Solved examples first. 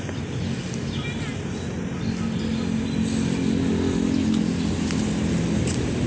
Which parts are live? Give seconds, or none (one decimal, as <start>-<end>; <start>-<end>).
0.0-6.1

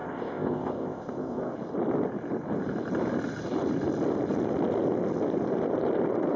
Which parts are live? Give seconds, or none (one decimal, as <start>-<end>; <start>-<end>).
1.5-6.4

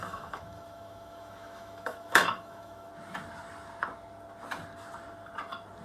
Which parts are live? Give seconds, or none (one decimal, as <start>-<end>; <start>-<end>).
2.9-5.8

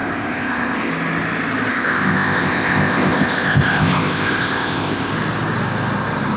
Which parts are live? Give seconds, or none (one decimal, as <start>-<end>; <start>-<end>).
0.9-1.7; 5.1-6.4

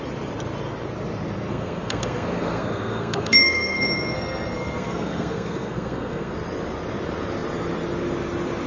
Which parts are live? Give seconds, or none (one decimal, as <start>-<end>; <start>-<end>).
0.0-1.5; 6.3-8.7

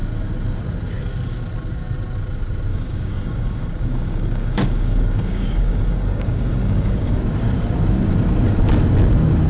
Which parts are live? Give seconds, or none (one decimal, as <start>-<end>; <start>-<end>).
0.0-2.7; 7.2-9.5

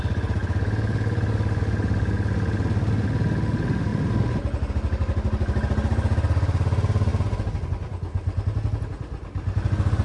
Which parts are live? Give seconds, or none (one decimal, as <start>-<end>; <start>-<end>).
0.0-0.4; 1.6-10.0